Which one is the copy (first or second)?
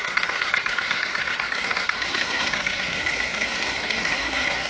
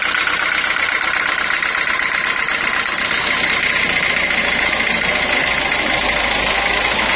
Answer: first